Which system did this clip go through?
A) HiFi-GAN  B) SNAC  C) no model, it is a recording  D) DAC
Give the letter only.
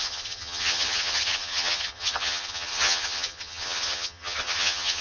A